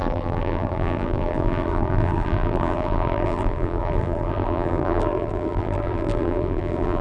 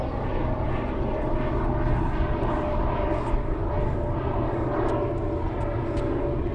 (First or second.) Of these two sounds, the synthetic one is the first